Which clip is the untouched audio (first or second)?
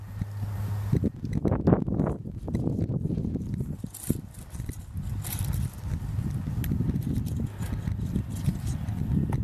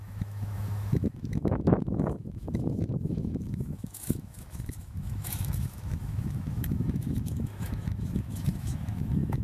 first